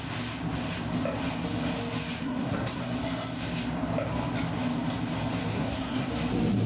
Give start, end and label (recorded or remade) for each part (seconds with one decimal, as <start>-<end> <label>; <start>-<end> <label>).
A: 0.0-2.2 recorded; 2.2-2.8 remade; 2.8-5.5 recorded; 5.5-6.1 remade; 6.1-6.7 recorded